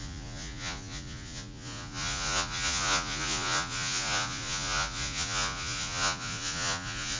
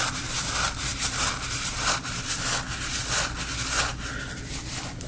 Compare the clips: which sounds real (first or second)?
second